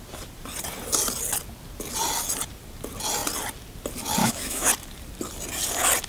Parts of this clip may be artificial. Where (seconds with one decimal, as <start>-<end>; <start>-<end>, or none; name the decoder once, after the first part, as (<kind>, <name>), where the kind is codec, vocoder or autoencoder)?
4.2-4.7 (autoencoder, DAC-VAE)